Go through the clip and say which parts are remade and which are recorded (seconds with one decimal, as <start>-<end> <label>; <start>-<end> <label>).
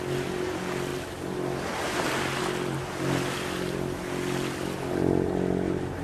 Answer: 0.0-6.0 recorded